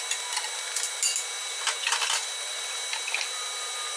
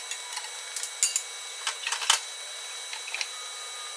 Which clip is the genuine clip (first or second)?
second